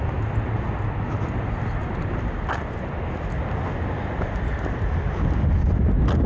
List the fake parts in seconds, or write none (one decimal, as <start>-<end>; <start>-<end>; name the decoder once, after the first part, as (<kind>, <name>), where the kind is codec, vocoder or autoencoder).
none